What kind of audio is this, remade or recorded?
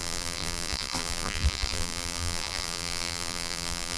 remade